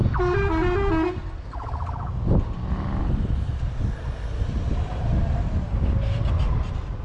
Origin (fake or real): real